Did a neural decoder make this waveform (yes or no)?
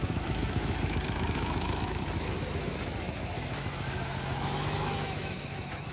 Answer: yes